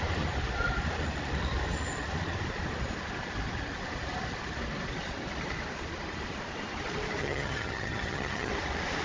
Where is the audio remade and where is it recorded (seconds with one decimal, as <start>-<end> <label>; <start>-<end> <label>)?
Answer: 0.0-7.2 recorded; 7.2-8.5 remade; 8.5-9.0 recorded